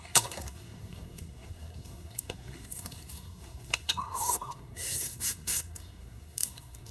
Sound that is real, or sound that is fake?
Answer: fake